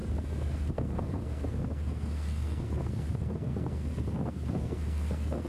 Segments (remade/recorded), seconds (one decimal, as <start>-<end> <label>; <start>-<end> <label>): 0.0-5.5 remade